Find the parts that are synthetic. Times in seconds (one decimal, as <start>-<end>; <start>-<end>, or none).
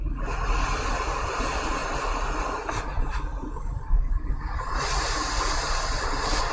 3.3-4.3